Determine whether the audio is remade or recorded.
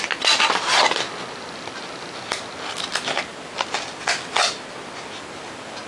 recorded